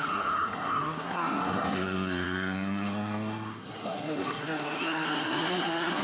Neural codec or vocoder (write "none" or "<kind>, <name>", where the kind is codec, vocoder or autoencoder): codec, SNAC